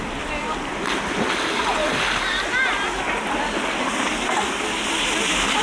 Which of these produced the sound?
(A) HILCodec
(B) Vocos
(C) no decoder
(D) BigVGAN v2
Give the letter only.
C